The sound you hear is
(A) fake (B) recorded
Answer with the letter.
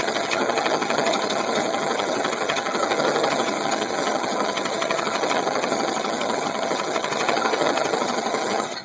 A